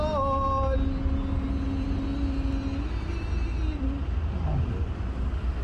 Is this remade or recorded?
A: recorded